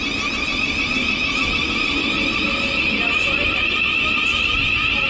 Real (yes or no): yes